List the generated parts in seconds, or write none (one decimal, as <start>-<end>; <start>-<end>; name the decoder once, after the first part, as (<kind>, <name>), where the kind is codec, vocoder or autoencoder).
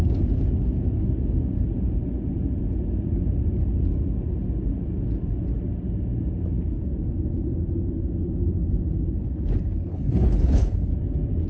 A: 9.9-10.9 (codec, HILCodec)